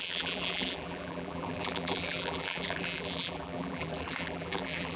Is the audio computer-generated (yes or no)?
yes